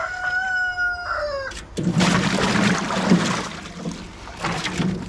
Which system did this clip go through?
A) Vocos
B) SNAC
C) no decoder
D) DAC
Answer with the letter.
C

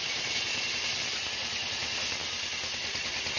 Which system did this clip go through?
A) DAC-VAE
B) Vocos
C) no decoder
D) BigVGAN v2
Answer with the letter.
C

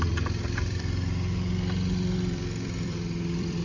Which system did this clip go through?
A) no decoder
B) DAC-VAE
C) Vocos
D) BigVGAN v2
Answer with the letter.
D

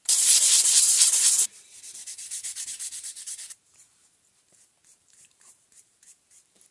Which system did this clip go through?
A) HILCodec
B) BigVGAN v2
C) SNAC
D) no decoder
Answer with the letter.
B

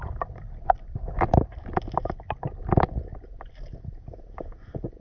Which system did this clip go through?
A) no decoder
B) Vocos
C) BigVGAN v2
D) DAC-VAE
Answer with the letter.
A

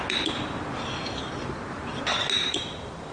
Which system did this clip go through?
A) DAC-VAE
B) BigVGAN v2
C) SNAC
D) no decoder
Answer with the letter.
D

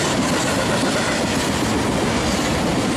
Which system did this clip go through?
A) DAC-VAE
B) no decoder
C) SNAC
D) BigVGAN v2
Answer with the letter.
B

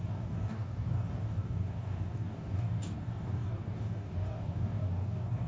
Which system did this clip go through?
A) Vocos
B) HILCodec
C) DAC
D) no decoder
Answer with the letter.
C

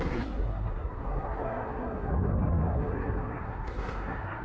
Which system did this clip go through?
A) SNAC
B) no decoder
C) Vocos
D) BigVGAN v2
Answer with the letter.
A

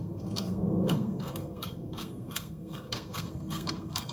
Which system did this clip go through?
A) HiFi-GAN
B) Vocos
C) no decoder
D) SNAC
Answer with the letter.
D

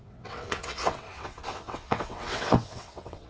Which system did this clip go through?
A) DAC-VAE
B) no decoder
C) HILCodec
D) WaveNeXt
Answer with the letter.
D